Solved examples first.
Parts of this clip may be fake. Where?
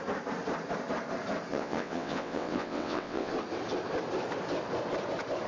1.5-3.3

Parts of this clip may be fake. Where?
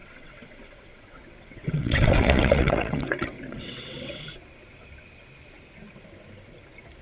0.0-4.2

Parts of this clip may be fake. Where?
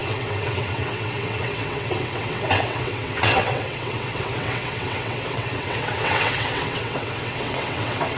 0.0-8.2